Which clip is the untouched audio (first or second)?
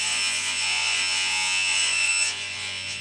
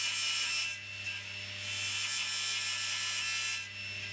second